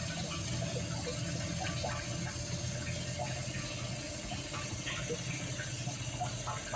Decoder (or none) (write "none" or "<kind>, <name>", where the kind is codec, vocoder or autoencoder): none